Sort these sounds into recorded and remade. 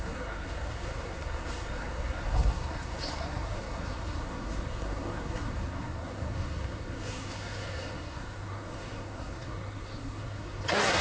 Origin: remade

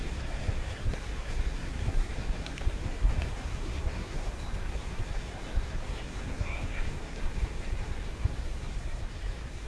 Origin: remade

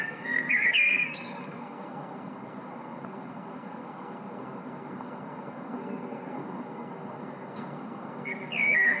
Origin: remade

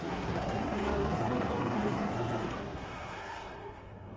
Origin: remade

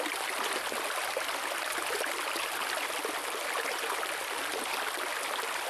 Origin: recorded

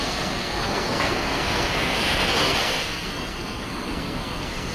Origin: remade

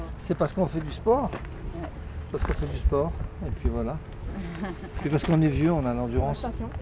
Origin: recorded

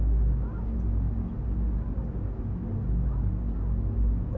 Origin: recorded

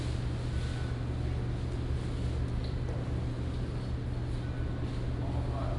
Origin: recorded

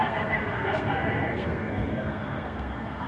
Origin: remade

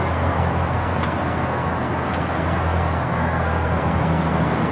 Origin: remade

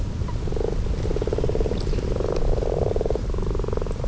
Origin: recorded